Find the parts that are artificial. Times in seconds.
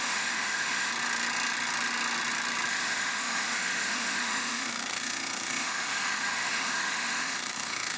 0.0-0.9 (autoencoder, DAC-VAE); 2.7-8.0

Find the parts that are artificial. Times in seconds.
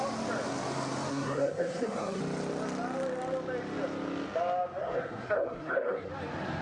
1.1-2.2 (codec, SNAC); 4.8-6.1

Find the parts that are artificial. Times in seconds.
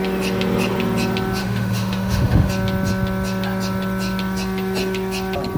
1.4-2.5 (autoencoder, DAC-VAE)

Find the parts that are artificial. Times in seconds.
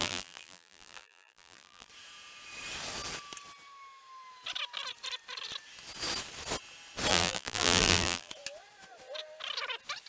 0.0-1.9 (vocoder, BigVGAN v2); 7.1-8.3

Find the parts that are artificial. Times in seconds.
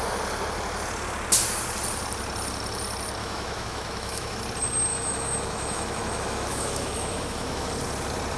3.2-4.4 (autoencoder, DAC-VAE); 4.9-7.7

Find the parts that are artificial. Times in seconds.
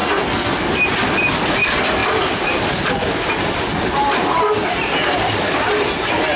0.0-0.5 (codec, SNAC)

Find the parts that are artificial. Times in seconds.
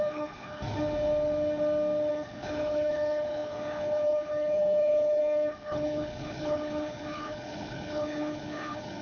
0.0-0.6 (codec, HILCodec); 2.1-9.0